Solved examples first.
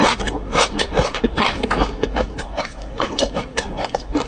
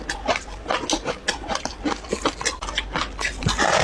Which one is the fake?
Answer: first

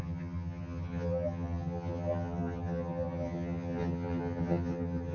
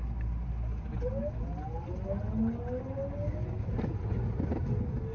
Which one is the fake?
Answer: first